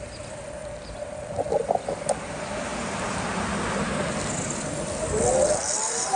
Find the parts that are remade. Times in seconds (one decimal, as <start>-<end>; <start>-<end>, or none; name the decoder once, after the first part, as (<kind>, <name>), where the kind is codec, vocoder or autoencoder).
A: none

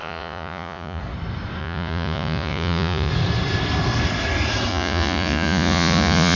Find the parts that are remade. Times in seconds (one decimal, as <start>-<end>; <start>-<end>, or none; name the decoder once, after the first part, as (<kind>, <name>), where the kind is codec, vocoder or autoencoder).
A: 0.0-1.0 (vocoder, Vocos); 1.6-3.1; 4.7-6.4

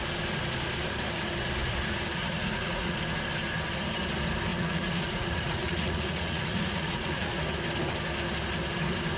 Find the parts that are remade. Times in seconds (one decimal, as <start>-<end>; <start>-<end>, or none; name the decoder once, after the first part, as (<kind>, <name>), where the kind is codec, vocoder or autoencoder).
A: 2.2-3.0 (vocoder, Vocos); 4.5-7.3

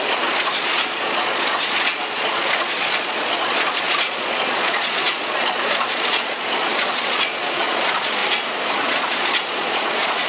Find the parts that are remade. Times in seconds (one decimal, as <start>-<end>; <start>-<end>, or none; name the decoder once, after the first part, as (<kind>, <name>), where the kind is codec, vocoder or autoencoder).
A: 0.0-8.2 (vocoder, Vocos); 8.7-10.3

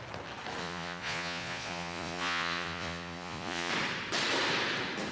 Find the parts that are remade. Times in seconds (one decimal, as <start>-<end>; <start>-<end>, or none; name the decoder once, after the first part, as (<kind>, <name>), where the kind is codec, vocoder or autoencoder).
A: 0.6-3.7 (vocoder, Vocos)